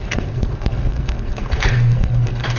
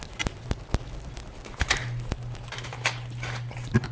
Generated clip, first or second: first